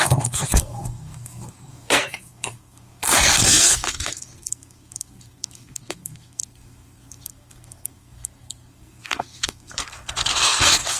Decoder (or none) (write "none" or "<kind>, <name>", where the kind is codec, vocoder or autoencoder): codec, SNAC